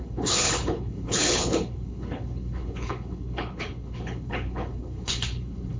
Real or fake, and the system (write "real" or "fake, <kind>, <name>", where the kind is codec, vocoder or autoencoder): fake, codec, HILCodec